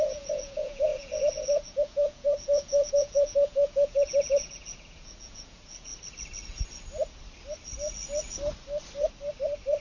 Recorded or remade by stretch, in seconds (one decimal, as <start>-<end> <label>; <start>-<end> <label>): 0.0-5.9 remade; 5.9-9.8 recorded